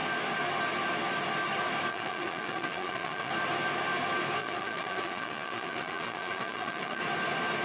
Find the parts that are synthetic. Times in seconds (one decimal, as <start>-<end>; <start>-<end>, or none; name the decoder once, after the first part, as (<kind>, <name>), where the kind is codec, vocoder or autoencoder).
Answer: 1.9-3.3 (vocoder, Vocos); 4.4-7.0